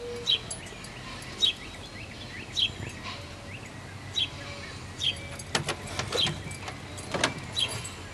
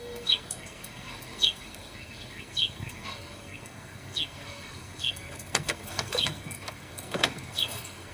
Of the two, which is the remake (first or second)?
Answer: second